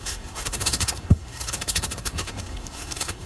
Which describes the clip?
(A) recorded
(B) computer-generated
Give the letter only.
B